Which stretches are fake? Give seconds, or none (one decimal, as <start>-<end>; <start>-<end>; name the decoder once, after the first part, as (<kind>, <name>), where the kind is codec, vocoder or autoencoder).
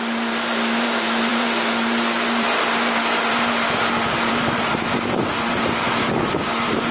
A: 0.0-6.9 (vocoder, BigVGAN v2)